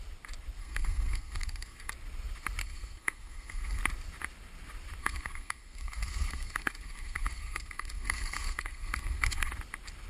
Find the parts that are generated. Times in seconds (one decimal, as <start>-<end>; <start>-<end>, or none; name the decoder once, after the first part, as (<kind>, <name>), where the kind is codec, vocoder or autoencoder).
0.6-1.9 (codec, SNAC); 2.6-3.8; 5.0-9.5